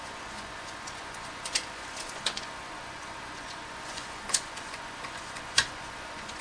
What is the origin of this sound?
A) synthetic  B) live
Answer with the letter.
A